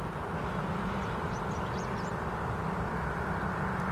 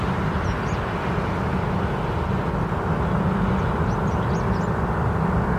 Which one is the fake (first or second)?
first